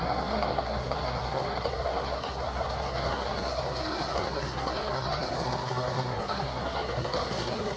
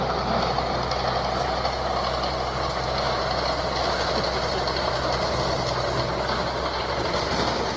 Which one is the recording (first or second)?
second